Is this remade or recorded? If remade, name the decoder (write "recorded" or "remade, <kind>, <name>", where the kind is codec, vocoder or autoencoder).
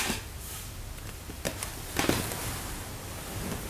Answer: remade, vocoder, BigVGAN v2